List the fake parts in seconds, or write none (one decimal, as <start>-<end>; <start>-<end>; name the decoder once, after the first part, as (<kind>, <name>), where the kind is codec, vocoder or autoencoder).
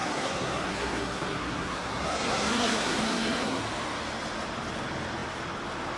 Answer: 0.0-3.6 (codec, SNAC)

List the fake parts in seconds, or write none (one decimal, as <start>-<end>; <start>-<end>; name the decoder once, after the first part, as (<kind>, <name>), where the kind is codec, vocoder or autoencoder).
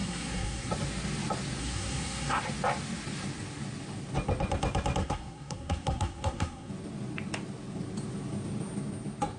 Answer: 0.0-0.7 (codec, SNAC); 1.6-2.4; 5.0-6.7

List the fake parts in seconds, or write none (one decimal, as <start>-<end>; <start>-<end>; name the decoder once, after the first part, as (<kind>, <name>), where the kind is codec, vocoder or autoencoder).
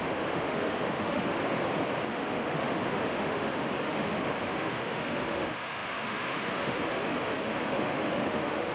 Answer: 0.0-1.4 (autoencoder, DAC-VAE); 2.1-8.7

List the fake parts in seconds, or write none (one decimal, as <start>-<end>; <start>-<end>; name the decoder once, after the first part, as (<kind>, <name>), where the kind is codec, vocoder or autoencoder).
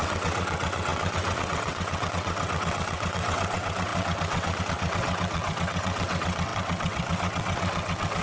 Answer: 0.0-8.2 (vocoder, WaveNeXt)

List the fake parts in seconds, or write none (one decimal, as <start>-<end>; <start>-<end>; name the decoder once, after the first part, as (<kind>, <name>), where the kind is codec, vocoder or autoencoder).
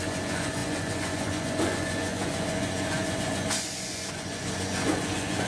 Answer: 0.0-5.5 (vocoder, Vocos)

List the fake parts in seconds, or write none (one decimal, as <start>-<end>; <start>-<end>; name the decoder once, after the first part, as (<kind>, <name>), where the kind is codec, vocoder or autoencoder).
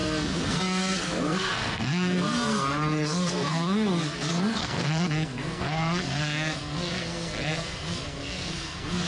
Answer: 0.0-9.1 (codec, SNAC)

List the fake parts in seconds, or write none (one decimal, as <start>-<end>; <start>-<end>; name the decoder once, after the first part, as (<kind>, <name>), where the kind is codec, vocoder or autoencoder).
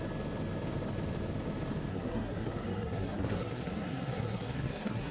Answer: 1.9-5.1 (codec, SNAC)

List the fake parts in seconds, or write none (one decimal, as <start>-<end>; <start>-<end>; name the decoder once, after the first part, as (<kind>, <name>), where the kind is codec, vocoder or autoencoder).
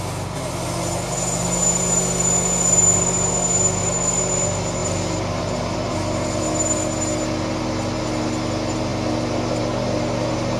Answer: 4.8-5.3 (vocoder, BigVGAN v2)